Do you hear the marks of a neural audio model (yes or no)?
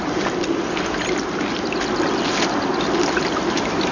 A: no